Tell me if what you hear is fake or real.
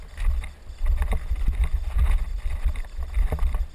real